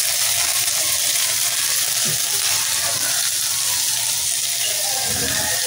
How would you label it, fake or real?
real